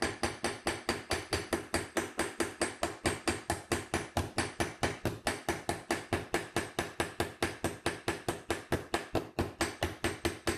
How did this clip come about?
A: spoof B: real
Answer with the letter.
B